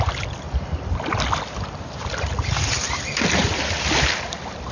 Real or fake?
real